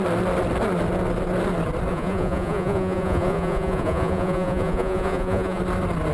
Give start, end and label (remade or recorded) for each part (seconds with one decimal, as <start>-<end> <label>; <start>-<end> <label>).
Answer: 0.0-1.9 recorded; 1.9-5.6 remade; 5.6-6.1 recorded